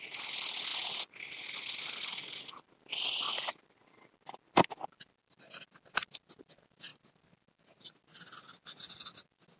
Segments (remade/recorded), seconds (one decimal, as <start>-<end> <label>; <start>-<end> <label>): 0.0-9.6 recorded